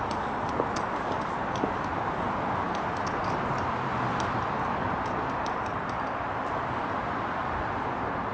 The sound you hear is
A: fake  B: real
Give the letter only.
B